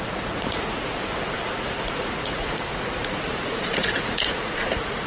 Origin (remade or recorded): remade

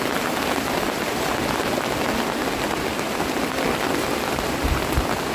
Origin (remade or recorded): recorded